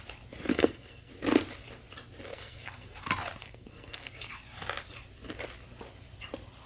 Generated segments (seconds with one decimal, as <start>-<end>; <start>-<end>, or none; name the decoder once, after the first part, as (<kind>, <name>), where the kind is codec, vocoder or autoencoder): 0.5-1.1 (codec, SNAC); 2.3-3.0; 3.4-4.1

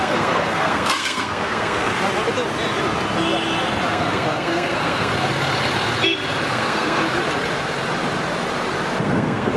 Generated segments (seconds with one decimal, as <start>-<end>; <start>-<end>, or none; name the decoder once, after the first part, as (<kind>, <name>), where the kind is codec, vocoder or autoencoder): 0.0-1.9 (codec, SNAC); 3.9-5.1; 6.5-7.0; 9.0-9.6

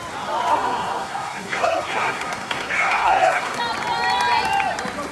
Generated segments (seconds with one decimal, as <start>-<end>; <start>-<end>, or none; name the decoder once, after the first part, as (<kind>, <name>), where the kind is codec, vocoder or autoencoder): 0.5-3.6 (codec, SNAC)

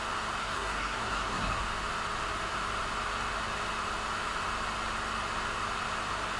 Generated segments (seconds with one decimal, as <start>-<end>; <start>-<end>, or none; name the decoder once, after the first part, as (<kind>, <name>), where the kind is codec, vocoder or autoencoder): 0.4-1.6 (codec, SNAC)